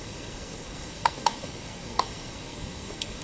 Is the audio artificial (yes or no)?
yes